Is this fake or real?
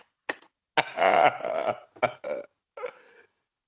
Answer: real